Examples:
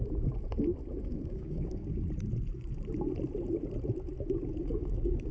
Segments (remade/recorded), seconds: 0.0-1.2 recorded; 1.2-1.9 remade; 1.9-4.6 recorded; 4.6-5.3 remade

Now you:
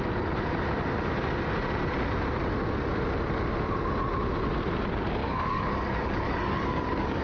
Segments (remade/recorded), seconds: 0.0-5.2 recorded; 5.2-7.2 remade

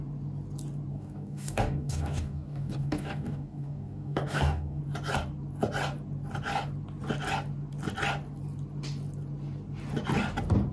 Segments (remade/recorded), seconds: 0.0-0.9 recorded; 0.9-4.8 remade; 4.8-10.7 recorded

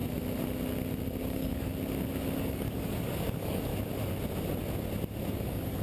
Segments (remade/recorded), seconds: 0.0-1.2 recorded; 1.2-1.7 remade; 1.7-2.4 recorded; 2.4-3.7 remade; 3.7-5.3 recorded; 5.3-5.8 remade

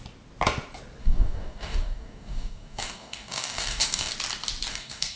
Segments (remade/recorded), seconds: 0.0-1.0 recorded; 1.0-4.1 remade; 4.1-4.7 recorded; 4.7-5.2 remade

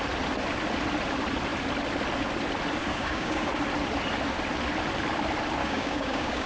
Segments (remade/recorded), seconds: 0.0-2.8 recorded; 2.8-3.5 remade; 3.5-5.6 recorded; 5.6-6.5 remade

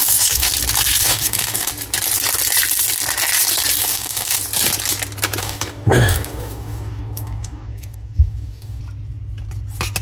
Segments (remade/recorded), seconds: 0.0-0.5 remade; 0.5-1.0 recorded; 1.0-1.7 remade; 1.7-3.8 recorded; 3.8-4.4 remade; 4.4-5.4 recorded; 5.4-8.8 remade; 8.8-10.0 recorded